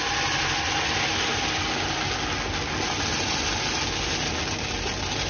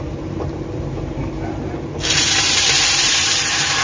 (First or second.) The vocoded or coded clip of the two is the second